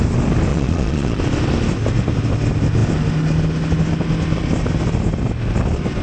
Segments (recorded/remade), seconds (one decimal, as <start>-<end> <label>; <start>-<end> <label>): 0.0-0.5 recorded; 0.5-1.2 remade; 1.2-6.0 recorded